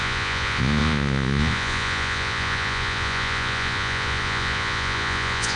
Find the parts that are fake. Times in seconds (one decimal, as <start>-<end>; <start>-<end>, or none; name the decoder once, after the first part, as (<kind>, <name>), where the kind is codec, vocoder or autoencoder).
0.0-5.6 (vocoder, Vocos)